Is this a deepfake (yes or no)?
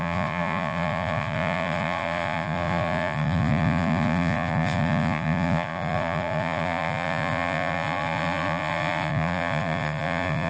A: yes